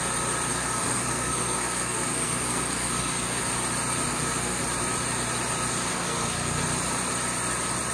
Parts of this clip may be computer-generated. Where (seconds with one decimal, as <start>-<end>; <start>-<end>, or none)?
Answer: 0.5-3.4; 4.1-4.6; 5.9-6.6